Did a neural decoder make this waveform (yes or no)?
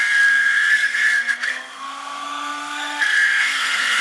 yes